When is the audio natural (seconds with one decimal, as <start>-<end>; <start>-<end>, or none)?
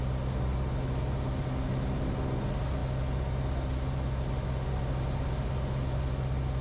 0.0-6.6